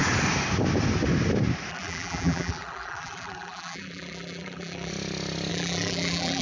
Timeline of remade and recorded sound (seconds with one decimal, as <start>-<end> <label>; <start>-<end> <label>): 0.0-1.7 recorded; 1.7-4.9 remade; 4.9-5.5 recorded; 5.5-6.4 remade